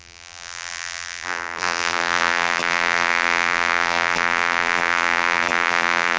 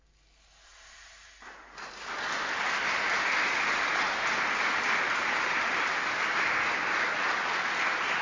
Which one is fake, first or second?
first